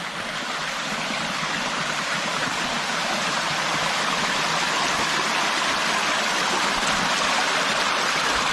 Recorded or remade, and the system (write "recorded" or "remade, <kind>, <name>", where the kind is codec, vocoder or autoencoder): recorded